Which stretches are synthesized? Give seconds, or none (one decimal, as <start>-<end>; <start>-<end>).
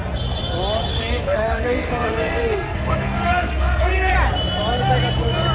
0.9-4.1